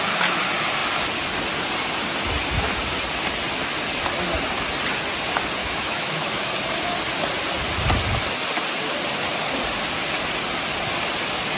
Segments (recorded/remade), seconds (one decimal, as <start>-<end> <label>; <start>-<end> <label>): 0.0-5.6 recorded; 5.6-6.5 remade; 6.5-11.6 recorded